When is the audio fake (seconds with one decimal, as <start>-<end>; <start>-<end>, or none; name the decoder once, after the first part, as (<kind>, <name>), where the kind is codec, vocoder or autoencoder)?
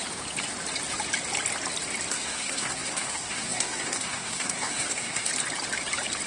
2.1-5.3 (codec, SNAC)